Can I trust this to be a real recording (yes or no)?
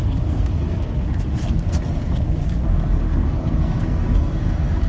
no